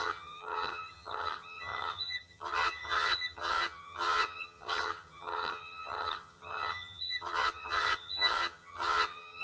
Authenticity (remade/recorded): remade